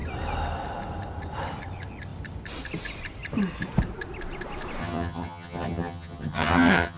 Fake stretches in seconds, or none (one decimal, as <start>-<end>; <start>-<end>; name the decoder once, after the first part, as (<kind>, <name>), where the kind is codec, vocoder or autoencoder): 4.8-7.0 (vocoder, HiFi-GAN)